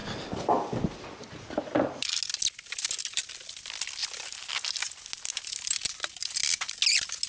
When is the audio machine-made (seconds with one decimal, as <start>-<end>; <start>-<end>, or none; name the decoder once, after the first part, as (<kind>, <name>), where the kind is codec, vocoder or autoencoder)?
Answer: none